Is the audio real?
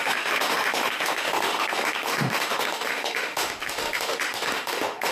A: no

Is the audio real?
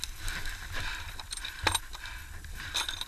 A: yes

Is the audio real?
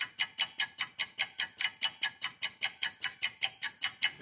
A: yes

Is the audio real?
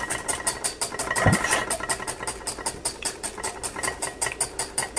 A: yes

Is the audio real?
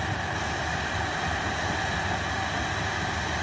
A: yes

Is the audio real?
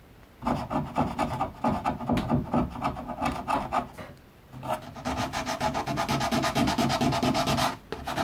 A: yes